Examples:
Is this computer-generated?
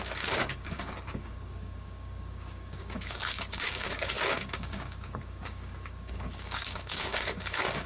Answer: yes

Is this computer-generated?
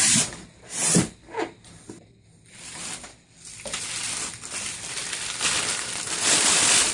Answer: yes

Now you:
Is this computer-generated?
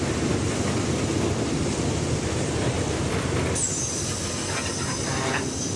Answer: no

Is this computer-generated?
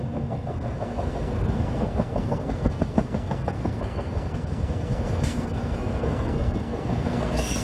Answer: yes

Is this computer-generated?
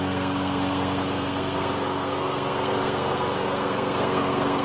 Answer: yes